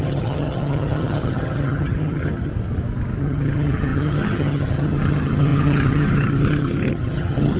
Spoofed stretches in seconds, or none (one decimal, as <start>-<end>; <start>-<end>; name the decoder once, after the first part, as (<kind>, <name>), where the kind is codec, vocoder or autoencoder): 0.0-2.5 (vocoder, HiFi-GAN); 3.2-7.6